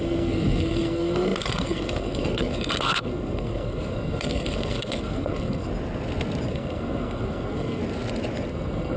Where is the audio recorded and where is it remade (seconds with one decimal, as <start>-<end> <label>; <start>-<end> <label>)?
0.0-5.7 remade; 5.7-6.5 recorded; 6.5-7.8 remade; 7.8-8.5 recorded; 8.5-9.0 remade